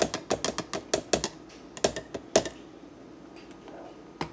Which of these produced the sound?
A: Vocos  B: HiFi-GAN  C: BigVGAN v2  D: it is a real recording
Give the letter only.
D